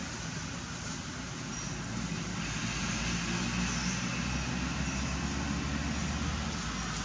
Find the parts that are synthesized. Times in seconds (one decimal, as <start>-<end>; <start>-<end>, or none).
none